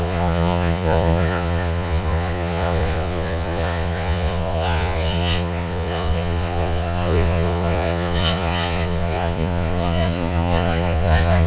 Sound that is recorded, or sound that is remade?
remade